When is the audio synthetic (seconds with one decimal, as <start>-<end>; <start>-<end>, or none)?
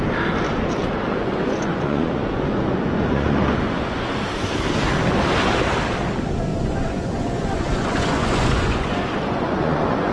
1.1-4.2; 6.5-10.1